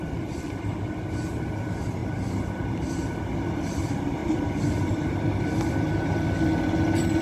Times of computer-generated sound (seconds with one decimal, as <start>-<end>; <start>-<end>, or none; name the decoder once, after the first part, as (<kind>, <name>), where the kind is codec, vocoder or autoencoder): none